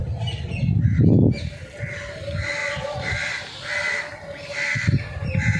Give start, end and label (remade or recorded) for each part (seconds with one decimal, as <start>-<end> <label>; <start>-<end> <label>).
0.0-5.6 recorded